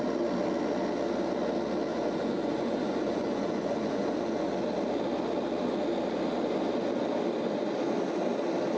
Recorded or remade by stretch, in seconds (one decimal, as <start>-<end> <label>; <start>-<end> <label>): 0.0-1.9 recorded; 1.9-4.5 remade; 4.5-8.8 recorded